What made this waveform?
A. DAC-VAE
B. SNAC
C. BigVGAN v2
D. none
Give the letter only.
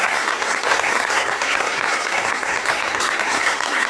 B